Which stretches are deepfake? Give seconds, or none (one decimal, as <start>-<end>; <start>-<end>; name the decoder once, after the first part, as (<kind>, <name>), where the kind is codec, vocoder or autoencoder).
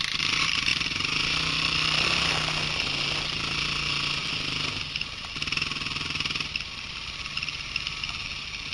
none